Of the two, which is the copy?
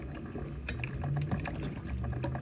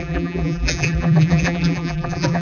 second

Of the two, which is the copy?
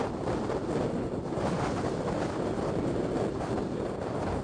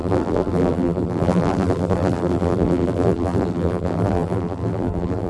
second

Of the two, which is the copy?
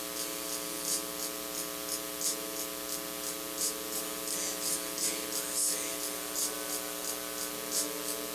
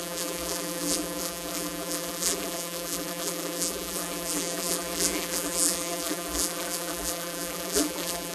second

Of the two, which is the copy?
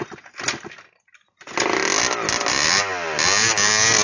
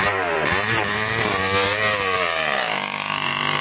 second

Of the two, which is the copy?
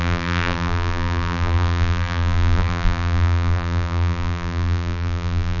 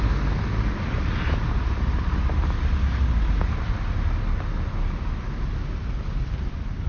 first